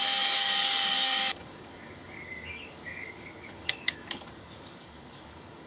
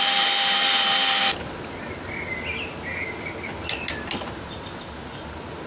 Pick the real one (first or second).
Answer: second